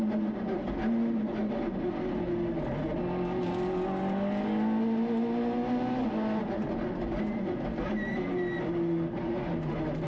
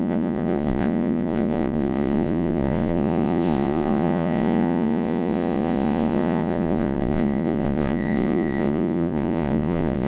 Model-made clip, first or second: second